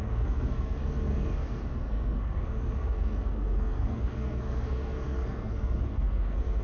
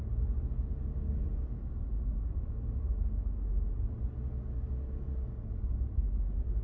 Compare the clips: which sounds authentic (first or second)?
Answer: second